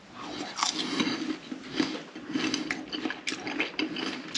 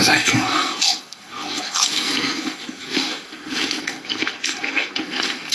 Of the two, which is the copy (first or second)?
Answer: second